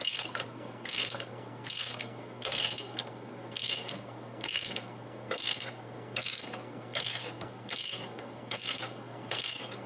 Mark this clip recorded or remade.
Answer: remade